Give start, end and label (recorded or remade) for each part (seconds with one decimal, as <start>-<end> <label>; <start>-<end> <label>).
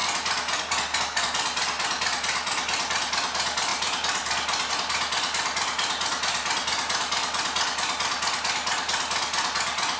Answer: 0.0-10.0 recorded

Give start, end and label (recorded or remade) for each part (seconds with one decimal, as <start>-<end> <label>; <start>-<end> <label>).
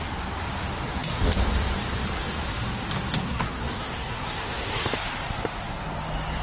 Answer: 0.0-3.1 recorded; 3.1-4.9 remade; 4.9-6.4 recorded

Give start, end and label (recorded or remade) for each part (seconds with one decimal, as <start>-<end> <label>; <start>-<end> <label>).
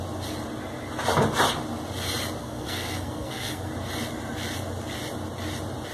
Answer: 0.0-2.4 recorded; 2.4-3.7 remade; 3.7-5.9 recorded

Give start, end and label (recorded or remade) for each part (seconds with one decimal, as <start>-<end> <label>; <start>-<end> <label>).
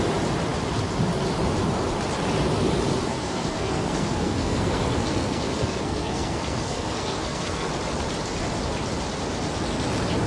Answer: 0.0-3.1 recorded; 3.1-7.7 remade; 7.7-10.3 recorded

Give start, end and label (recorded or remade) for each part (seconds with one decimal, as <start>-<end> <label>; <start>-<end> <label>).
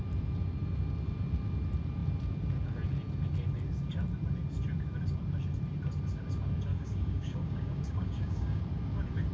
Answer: 0.0-6.7 recorded; 6.7-8.6 remade; 8.6-9.3 recorded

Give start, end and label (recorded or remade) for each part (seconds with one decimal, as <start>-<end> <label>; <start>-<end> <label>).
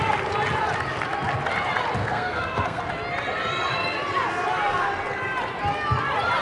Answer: 0.0-2.0 recorded; 2.0-2.8 remade; 2.8-6.4 recorded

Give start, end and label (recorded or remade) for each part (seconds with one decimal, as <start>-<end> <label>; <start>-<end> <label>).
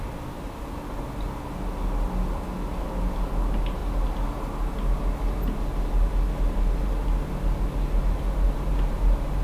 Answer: 0.0-9.4 recorded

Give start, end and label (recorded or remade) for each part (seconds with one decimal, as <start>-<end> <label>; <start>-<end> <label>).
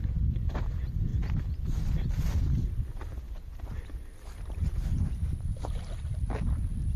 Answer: 0.0-1.1 remade; 1.1-2.8 recorded; 2.8-7.0 remade